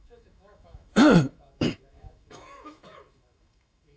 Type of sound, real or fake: fake